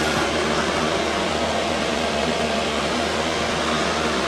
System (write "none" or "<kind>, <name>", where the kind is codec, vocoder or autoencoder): vocoder, Vocos